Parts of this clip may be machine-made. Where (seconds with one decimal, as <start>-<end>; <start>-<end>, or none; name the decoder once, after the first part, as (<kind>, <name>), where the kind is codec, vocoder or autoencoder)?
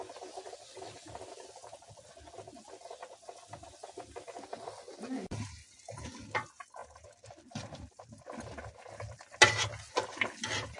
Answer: 6.8-8.0 (vocoder, BigVGAN v2)